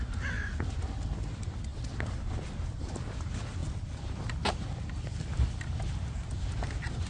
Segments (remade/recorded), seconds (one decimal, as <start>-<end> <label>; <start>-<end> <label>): 0.0-7.1 recorded